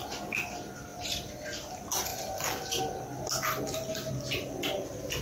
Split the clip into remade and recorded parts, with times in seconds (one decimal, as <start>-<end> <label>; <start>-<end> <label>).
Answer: 0.0-0.9 recorded; 0.9-1.7 remade; 1.7-5.2 recorded